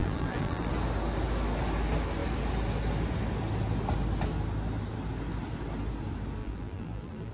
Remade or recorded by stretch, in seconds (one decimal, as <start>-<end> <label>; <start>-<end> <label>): 0.0-0.7 remade; 0.7-6.4 recorded; 6.4-7.3 remade